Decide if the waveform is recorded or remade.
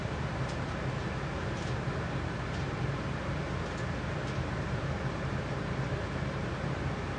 remade